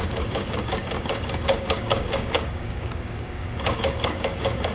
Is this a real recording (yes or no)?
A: no